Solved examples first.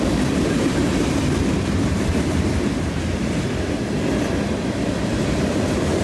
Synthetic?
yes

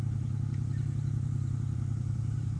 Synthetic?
yes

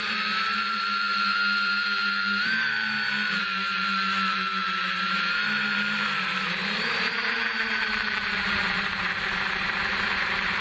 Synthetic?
yes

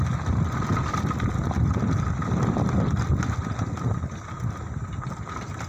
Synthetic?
no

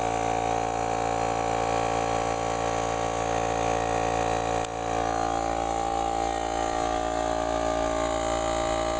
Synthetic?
no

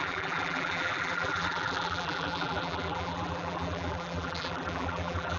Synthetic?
yes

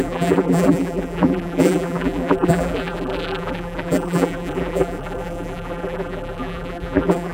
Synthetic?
yes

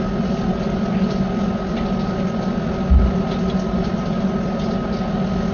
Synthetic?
no